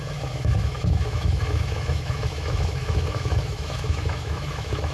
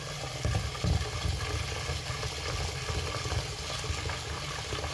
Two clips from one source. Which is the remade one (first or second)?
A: first